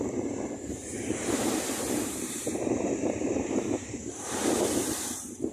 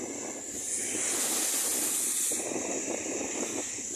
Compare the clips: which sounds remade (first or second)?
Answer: first